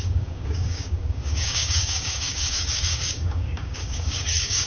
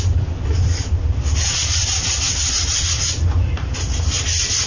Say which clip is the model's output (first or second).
first